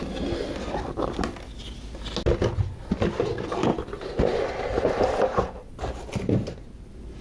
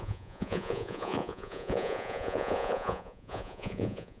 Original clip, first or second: first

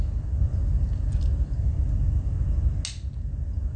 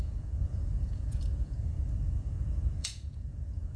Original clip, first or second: first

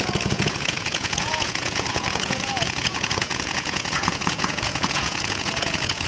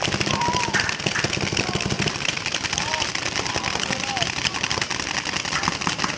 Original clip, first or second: second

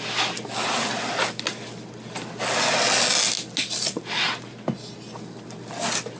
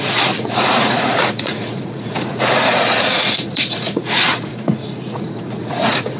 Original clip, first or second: first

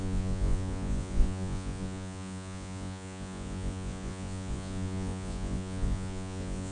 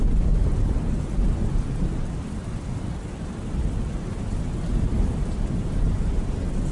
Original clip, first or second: second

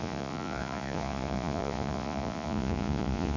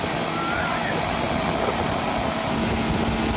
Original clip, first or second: second